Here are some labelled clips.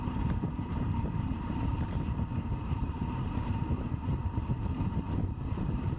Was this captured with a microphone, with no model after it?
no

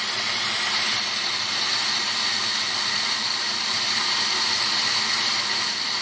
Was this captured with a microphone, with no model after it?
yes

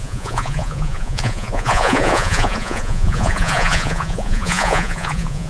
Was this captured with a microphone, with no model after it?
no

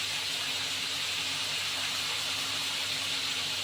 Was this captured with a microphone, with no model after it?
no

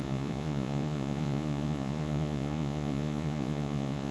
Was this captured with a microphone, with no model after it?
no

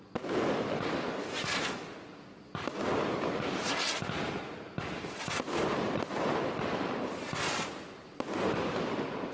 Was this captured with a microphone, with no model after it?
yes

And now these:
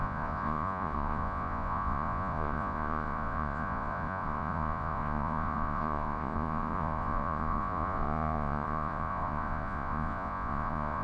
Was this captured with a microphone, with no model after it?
no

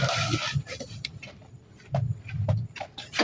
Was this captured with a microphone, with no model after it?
no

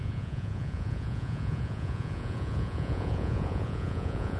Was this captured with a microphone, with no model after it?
no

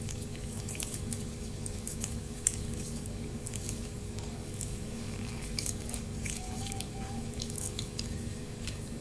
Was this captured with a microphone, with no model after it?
no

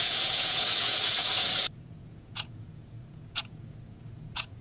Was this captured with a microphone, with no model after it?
no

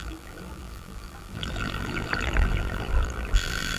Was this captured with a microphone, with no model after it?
no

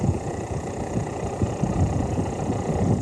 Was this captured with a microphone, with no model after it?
no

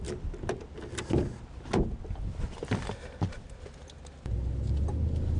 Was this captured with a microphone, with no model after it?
yes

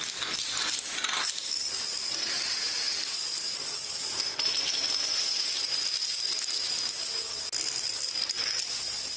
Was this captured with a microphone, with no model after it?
yes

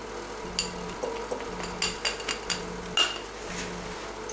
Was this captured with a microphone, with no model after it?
yes